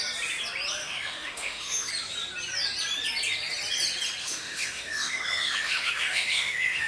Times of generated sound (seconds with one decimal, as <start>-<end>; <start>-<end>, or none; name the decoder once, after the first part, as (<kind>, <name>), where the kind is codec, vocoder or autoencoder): 0.8-1.9 (autoencoder, DAC-VAE); 4.2-6.9